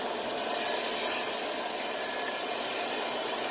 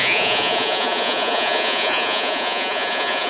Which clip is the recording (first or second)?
first